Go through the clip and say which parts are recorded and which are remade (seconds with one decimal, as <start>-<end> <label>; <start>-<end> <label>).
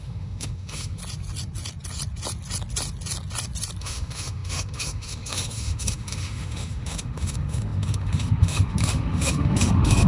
0.0-1.0 remade; 1.0-3.8 recorded; 3.8-10.1 remade